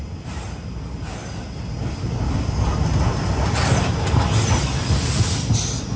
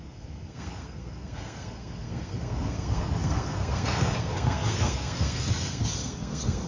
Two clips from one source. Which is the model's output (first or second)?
second